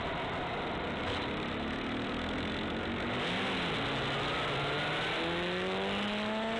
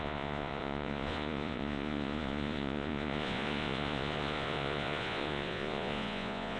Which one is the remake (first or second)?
second